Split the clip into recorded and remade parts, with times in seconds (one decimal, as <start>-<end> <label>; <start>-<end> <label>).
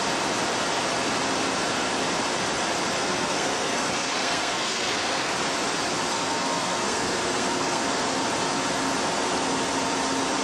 0.0-3.0 recorded; 3.0-5.3 remade; 5.3-6.1 recorded; 6.1-7.8 remade; 7.8-10.4 recorded